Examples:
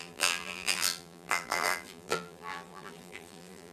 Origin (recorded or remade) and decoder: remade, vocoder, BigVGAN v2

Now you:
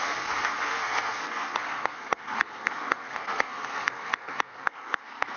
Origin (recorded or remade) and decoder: remade, codec, SNAC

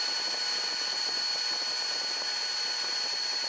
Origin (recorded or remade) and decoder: recorded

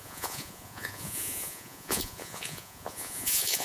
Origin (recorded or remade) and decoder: remade, vocoder, Vocos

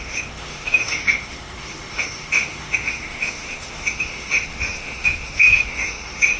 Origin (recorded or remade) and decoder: remade, autoencoder, DAC-VAE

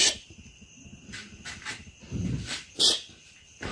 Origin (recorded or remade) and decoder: recorded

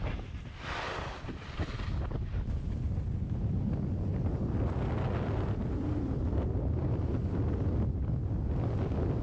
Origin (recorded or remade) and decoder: recorded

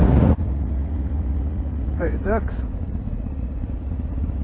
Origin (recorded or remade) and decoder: remade, vocoder, Vocos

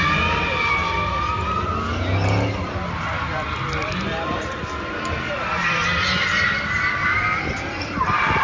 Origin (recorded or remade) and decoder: recorded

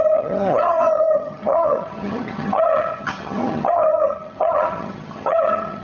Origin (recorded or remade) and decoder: remade, vocoder, HiFi-GAN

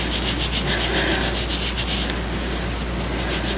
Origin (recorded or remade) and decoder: recorded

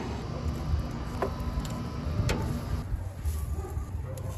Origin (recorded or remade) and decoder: recorded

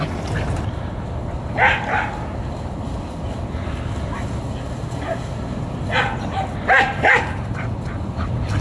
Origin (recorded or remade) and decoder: recorded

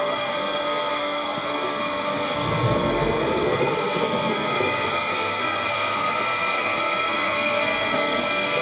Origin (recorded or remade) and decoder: remade, codec, SNAC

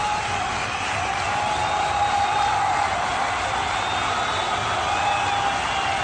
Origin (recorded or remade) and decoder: recorded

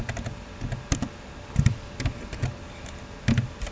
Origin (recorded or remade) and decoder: recorded